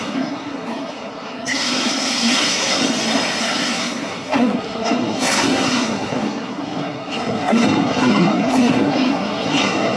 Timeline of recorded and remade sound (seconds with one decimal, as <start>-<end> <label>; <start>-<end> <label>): 0.0-2.8 remade; 2.8-3.4 recorded; 3.4-10.0 remade

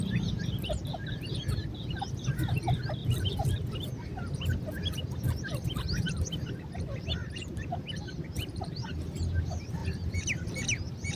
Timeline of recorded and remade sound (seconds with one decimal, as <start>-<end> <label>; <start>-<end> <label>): 0.0-11.2 recorded

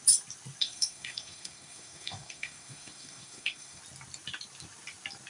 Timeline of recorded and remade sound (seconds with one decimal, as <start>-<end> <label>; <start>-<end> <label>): 0.0-0.6 recorded; 0.6-3.8 remade; 3.8-5.3 recorded